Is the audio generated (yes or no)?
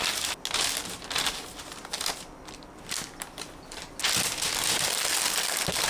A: no